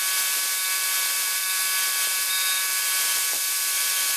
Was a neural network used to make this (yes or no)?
yes